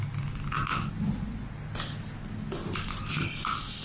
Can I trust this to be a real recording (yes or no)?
yes